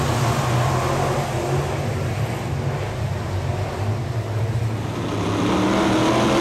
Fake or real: real